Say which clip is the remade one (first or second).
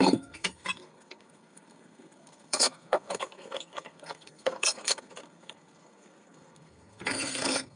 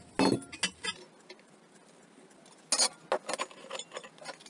first